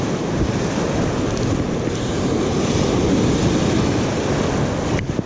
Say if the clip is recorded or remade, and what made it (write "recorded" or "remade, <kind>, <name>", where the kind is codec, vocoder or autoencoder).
recorded